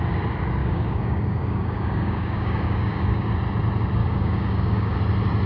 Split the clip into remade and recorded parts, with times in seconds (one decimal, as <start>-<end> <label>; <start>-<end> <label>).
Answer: 0.0-0.6 recorded; 0.6-3.3 remade; 3.3-4.0 recorded; 4.0-5.0 remade; 5.0-5.5 recorded